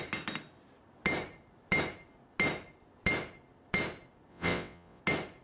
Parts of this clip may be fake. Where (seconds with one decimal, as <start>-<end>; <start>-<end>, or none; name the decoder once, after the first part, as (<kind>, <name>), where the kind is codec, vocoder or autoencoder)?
4.3-5.0 (vocoder, WaveNeXt)

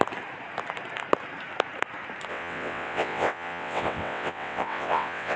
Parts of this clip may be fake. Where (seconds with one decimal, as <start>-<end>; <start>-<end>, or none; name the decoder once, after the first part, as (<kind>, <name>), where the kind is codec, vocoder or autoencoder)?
2.3-5.4 (vocoder, WaveNeXt)